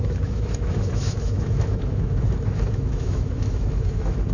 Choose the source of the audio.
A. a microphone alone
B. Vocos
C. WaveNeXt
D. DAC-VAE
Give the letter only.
D